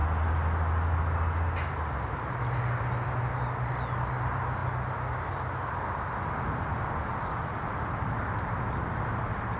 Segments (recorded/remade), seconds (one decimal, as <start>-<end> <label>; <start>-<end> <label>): 0.0-9.6 recorded